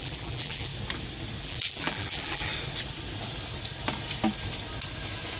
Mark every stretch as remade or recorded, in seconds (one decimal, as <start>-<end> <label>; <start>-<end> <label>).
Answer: 0.0-0.7 remade; 0.7-1.4 recorded; 1.4-2.5 remade; 2.5-5.4 recorded